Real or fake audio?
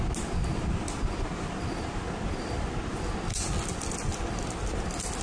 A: real